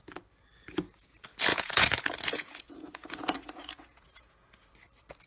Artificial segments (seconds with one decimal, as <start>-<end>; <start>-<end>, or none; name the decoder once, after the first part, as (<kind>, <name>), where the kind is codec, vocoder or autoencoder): 1.5-4.6 (vocoder, Vocos)